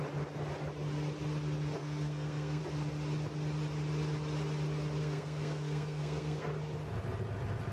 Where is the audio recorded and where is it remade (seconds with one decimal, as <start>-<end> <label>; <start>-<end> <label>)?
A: 0.0-1.8 recorded; 1.8-2.6 remade; 2.6-5.0 recorded; 5.0-6.5 remade; 6.5-7.7 recorded